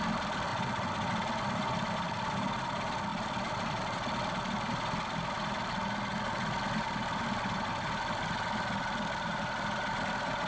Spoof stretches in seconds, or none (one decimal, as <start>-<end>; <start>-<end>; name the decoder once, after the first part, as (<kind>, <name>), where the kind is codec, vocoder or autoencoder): none